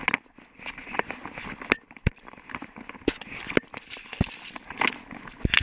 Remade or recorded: recorded